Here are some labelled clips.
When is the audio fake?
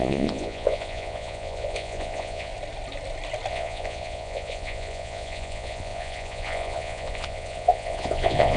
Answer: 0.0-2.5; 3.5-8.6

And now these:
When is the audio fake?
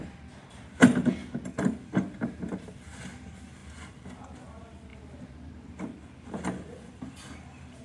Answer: 0.0-4.9; 5.8-7.8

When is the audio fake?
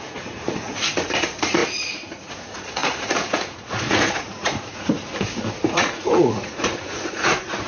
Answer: 0.0-4.9; 5.7-7.7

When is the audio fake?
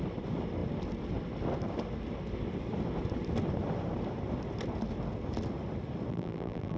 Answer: 6.1-6.8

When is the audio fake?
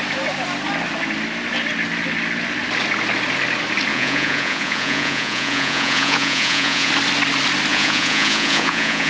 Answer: 3.9-6.9; 7.7-9.1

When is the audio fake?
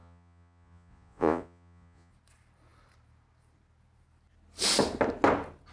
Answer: 0.0-2.1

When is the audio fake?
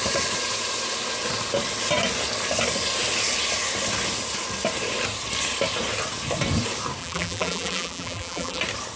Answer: 7.0-8.6